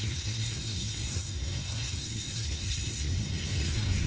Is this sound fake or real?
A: fake